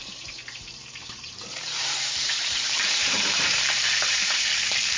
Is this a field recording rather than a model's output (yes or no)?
no